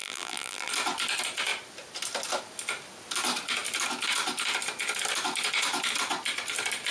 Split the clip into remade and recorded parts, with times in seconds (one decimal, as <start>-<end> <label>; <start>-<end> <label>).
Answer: 0.0-0.7 remade; 0.7-6.9 recorded